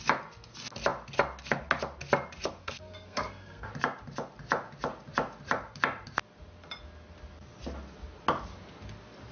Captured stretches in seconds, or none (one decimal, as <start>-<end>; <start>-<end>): 0.0-2.6; 3.7-9.3